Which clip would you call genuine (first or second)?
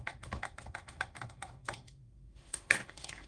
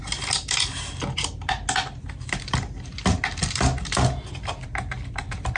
second